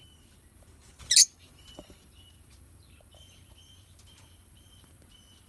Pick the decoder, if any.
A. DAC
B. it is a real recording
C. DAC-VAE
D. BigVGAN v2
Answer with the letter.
D